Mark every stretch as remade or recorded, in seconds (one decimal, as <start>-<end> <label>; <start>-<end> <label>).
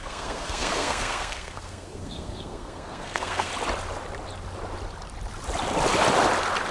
0.0-3.5 remade; 3.5-6.7 recorded